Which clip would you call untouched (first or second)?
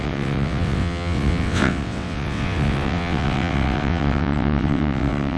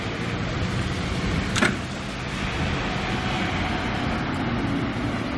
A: second